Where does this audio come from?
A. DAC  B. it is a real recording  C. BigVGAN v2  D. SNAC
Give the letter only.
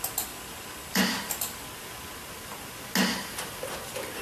B